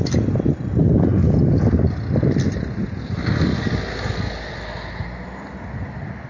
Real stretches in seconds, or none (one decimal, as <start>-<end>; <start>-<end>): 0.0-6.3